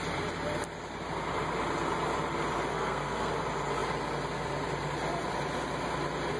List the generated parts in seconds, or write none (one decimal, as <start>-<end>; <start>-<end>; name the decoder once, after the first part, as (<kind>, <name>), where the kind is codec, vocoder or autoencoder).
2.7-3.3 (codec, SNAC)